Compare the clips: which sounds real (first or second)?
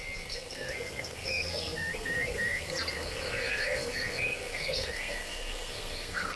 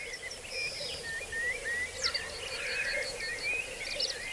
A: second